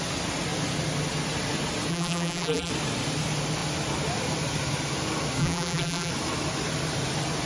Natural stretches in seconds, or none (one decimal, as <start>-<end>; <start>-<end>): 0.0-1.9; 2.7-5.4; 6.1-7.5